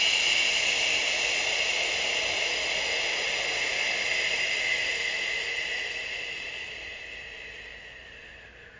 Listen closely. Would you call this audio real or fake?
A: real